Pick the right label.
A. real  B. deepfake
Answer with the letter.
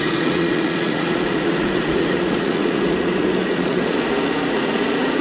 B